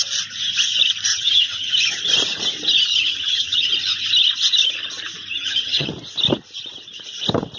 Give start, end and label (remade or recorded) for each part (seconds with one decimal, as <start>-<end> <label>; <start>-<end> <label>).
0.0-1.1 recorded; 1.1-1.7 remade; 1.7-2.9 recorded; 2.9-3.7 remade; 3.7-5.3 recorded; 5.3-5.9 remade; 5.9-7.6 recorded